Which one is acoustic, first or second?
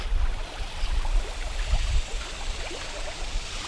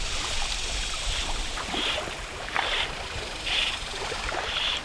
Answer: first